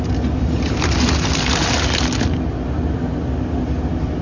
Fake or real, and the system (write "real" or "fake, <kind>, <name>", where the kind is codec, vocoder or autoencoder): real